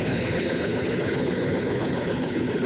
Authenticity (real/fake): fake